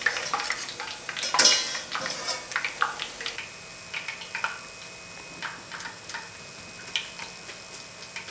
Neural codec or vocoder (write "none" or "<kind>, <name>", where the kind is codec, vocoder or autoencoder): none